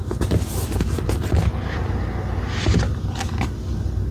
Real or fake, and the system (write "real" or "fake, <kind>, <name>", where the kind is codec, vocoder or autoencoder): real